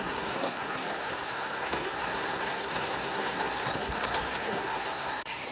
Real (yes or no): no